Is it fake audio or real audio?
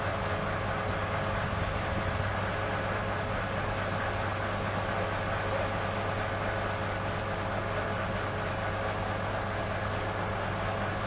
real